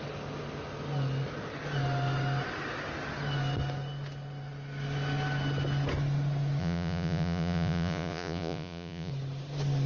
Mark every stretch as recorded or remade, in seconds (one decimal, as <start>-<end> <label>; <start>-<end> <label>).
0.0-6.6 recorded; 6.6-9.1 remade; 9.1-9.9 recorded